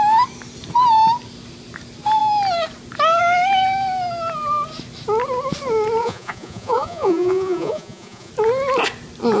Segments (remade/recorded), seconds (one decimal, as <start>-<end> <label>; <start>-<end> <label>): 0.0-6.0 recorded; 6.0-8.3 remade; 8.3-9.4 recorded